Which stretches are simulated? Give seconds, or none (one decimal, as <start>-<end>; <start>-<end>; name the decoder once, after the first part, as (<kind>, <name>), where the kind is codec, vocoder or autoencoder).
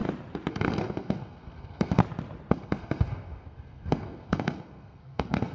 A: 0.5-2.0 (codec, SNAC); 2.5-5.5